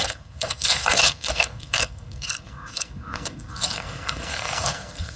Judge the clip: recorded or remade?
remade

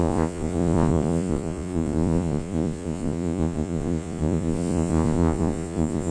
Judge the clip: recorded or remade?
remade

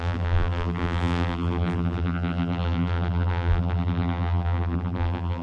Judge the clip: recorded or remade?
remade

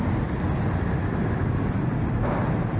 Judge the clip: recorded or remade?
recorded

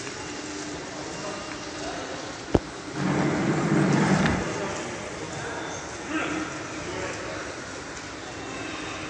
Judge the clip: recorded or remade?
recorded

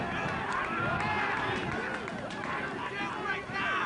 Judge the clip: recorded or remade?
recorded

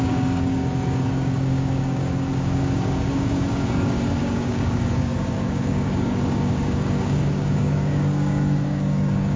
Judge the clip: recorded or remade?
remade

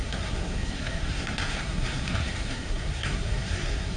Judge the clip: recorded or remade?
remade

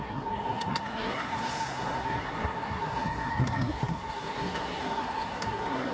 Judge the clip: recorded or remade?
remade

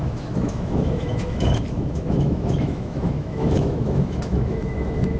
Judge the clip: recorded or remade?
remade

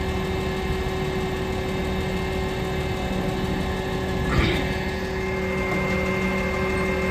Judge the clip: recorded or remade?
recorded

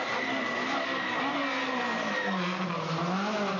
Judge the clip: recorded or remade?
recorded